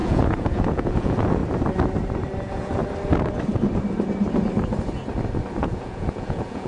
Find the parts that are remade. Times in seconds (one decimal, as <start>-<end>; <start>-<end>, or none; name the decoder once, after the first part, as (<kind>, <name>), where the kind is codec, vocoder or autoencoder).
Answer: 0.0-1.4 (vocoder, Vocos); 2.4-2.8; 5.6-6.7